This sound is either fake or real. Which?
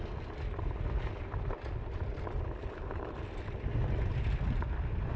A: real